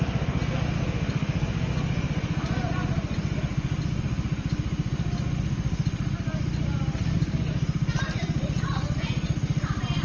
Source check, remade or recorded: recorded